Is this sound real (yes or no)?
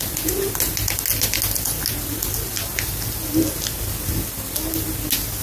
yes